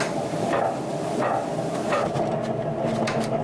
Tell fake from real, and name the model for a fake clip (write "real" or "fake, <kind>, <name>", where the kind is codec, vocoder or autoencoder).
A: real